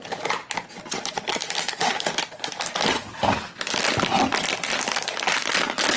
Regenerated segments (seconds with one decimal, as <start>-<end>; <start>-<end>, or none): none